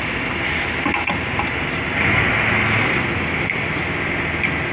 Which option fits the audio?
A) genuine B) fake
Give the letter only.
A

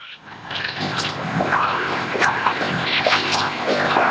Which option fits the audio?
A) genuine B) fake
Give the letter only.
B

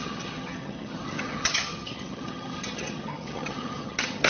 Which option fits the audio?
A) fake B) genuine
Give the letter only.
A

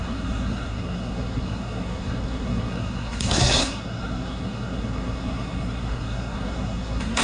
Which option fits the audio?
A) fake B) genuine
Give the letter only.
A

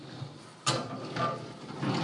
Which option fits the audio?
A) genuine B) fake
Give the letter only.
A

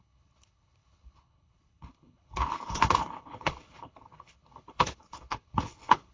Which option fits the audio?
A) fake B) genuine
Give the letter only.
A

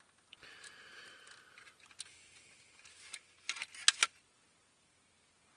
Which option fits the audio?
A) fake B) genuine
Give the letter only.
B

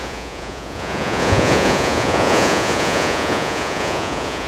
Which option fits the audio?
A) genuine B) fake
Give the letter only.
B